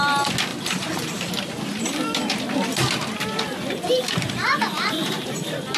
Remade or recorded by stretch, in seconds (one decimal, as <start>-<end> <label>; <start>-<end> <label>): 0.0-0.5 recorded; 0.5-1.3 remade; 1.3-5.8 recorded